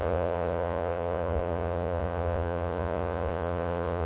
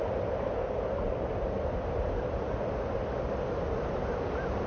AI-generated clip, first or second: first